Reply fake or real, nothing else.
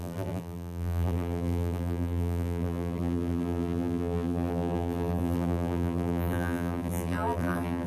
fake